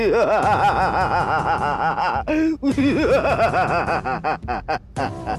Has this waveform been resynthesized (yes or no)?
no